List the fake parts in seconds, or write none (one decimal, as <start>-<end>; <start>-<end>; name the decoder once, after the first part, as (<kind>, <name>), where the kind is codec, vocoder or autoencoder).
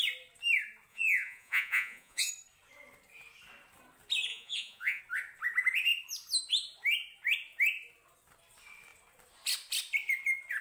0.9-2.3 (vocoder, Vocos); 4.3-5.0